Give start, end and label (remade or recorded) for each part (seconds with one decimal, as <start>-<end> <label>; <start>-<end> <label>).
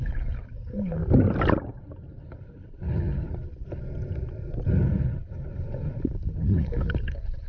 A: 0.0-1.0 remade; 1.0-2.2 recorded; 2.2-3.8 remade; 3.8-4.8 recorded; 4.8-7.5 remade